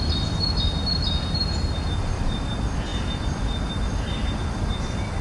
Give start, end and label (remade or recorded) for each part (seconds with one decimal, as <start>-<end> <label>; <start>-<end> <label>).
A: 0.0-5.2 recorded